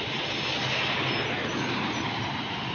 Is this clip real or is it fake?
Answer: real